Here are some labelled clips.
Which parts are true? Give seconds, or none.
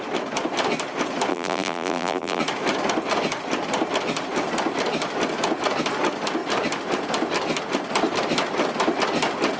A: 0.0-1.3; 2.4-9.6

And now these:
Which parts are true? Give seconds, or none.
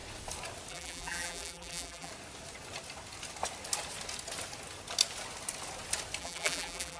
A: 0.0-0.7; 2.1-6.2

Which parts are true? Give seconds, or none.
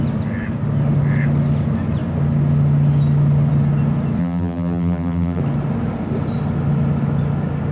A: 0.0-4.2; 5.4-7.7